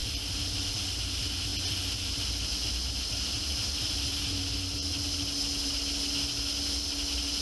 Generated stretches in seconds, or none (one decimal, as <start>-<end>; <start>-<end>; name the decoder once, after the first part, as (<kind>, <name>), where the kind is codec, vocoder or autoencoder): 0.0-0.7 (vocoder, BigVGAN v2)